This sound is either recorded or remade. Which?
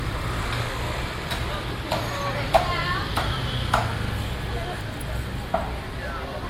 recorded